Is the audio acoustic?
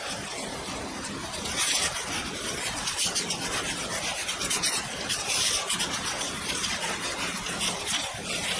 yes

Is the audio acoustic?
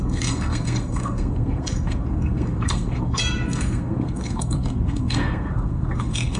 no